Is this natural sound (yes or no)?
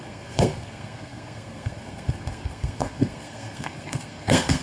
no